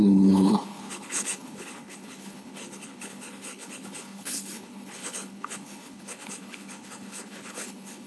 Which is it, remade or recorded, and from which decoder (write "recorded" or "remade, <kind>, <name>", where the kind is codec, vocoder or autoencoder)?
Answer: remade, codec, HILCodec